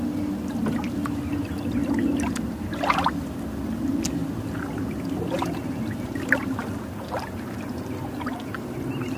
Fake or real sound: real